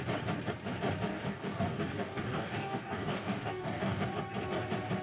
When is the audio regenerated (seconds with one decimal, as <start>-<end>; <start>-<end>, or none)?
1.1-4.1